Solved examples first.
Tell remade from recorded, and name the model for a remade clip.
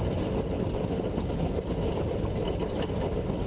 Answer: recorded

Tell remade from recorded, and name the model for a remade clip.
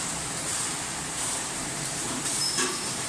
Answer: remade, vocoder, BigVGAN v2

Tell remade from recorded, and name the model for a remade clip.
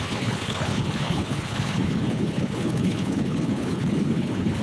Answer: remade, codec, HILCodec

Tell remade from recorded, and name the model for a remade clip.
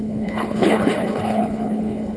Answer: remade, codec, HILCodec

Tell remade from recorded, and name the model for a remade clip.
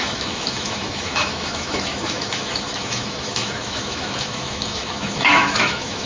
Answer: remade, autoencoder, DAC-VAE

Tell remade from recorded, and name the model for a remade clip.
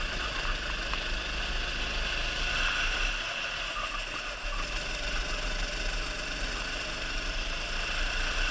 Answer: recorded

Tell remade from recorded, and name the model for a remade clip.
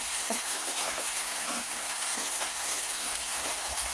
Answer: remade, codec, SNAC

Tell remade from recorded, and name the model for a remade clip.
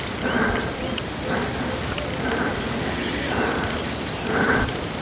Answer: recorded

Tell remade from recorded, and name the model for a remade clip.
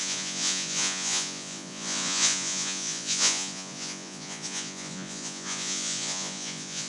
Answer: remade, vocoder, Vocos